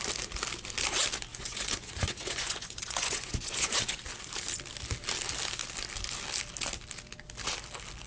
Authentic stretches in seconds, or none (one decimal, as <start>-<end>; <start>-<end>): 0.0-1.3; 4.0-8.1